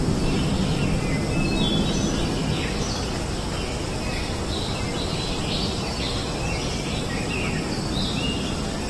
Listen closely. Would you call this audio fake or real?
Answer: real